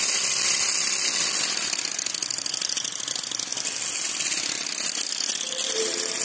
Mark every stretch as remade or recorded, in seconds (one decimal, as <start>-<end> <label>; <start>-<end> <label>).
0.0-6.2 recorded